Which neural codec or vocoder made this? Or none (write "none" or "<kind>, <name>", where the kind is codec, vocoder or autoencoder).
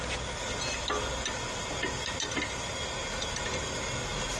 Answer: none